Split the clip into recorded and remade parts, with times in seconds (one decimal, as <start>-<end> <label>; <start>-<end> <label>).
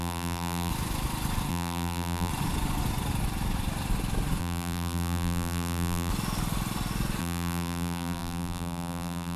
0.0-0.7 remade; 0.7-1.5 recorded; 1.5-2.3 remade; 2.3-4.4 recorded; 4.4-6.1 remade; 6.1-7.2 recorded; 7.2-9.4 remade